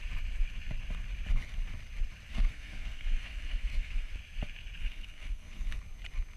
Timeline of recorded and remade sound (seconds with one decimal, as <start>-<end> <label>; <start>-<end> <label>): 0.0-2.3 recorded; 2.3-4.1 remade; 4.1-4.8 recorded; 4.8-5.8 remade; 5.8-6.4 recorded